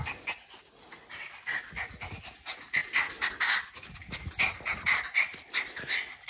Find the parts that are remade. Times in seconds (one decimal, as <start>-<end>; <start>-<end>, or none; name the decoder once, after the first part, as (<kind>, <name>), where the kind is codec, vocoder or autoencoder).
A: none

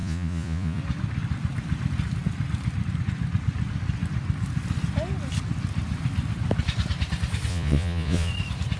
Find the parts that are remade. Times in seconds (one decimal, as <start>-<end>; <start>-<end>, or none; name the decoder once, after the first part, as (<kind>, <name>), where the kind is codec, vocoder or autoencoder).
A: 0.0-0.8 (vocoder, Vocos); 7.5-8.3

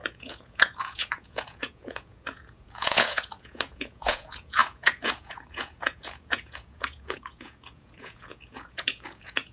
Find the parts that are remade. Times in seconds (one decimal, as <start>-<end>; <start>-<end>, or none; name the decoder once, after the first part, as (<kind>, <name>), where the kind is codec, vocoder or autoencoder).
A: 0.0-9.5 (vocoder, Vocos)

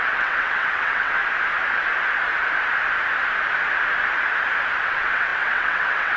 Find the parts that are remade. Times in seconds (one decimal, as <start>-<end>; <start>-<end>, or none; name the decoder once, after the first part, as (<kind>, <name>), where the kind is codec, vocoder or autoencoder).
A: 0.0-1.2 (vocoder, WaveNeXt); 4.8-6.2